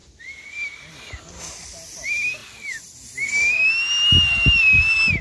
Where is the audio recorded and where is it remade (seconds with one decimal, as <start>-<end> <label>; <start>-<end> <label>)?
0.0-5.2 recorded